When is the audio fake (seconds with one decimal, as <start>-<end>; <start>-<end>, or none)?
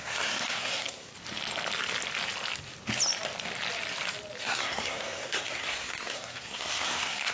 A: 0.0-1.1; 4.4-7.3